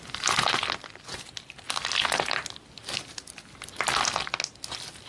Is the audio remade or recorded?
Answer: recorded